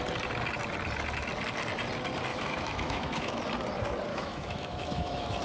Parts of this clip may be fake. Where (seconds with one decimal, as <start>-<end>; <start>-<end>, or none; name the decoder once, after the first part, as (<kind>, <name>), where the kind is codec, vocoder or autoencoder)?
2.3-3.4 (autoencoder, DAC-VAE); 4.1-5.4